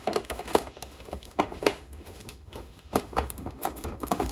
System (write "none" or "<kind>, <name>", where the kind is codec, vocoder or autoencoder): autoencoder, DAC-VAE